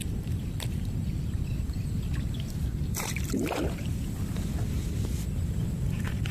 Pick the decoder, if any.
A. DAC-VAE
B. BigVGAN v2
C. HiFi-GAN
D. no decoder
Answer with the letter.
B